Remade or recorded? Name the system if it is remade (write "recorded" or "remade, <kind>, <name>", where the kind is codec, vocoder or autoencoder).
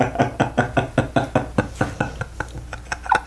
recorded